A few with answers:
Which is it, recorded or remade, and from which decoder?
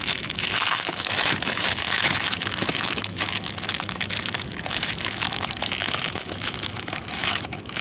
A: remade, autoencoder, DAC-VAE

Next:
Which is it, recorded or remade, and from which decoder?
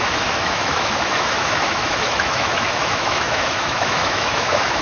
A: remade, autoencoder, DAC-VAE